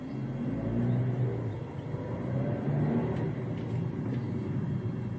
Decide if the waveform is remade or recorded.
recorded